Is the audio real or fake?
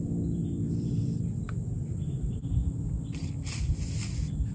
real